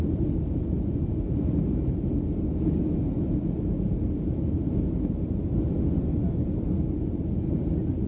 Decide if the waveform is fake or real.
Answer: real